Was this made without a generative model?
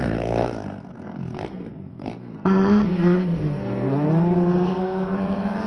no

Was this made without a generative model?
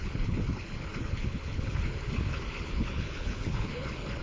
no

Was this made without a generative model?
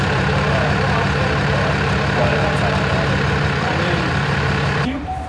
no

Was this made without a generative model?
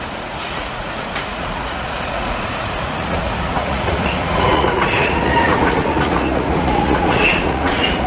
no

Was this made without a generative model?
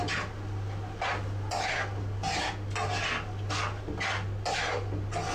yes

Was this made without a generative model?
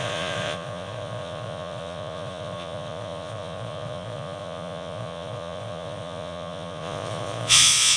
no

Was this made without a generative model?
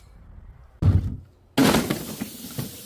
yes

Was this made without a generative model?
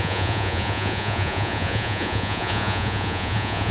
no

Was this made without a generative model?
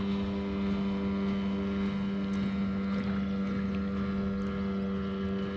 yes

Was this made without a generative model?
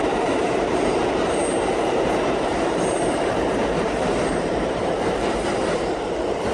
no